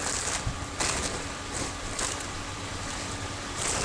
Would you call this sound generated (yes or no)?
no